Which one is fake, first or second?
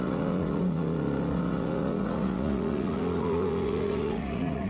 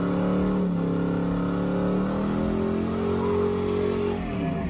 first